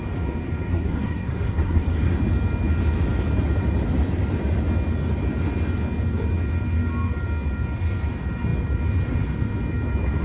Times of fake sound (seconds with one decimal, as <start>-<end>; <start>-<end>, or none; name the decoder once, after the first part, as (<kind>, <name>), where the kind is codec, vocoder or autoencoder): 0.7-2.2 (codec, SNAC)